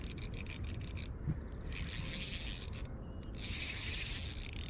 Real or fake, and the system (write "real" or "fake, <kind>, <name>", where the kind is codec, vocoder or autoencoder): real